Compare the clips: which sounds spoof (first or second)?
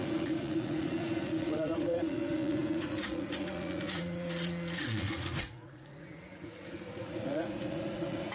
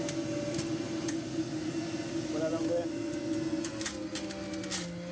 first